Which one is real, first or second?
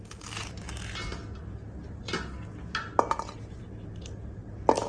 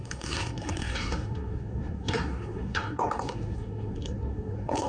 first